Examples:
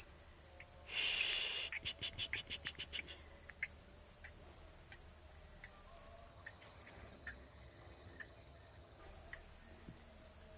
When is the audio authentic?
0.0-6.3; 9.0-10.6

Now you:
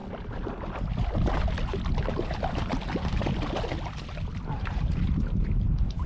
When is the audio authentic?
0.0-2.1; 3.3-4.5

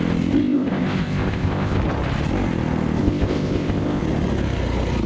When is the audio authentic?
0.0-0.4; 1.8-3.0; 4.0-5.1

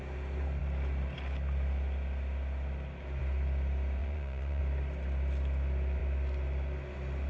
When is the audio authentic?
0.0-4.0; 4.6-7.3

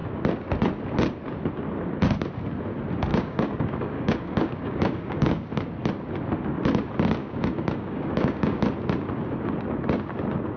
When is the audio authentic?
0.0-3.1; 5.5-7.2; 8.6-10.6

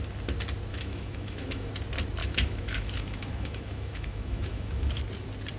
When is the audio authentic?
0.0-0.7; 1.7-2.2; 5.0-5.6